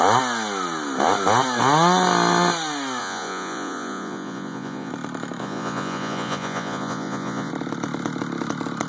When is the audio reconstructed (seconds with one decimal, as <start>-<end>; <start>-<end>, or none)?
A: 3.0-4.9; 5.4-7.5